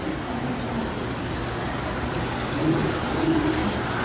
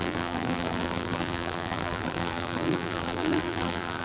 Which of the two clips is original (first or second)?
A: first